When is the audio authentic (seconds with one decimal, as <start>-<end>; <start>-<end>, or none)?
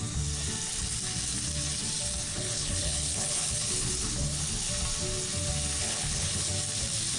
0.0-2.3; 4.7-5.8; 6.5-7.2